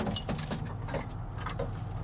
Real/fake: real